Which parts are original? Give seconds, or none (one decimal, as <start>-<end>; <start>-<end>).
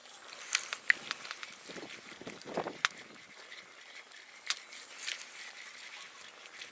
0.0-6.7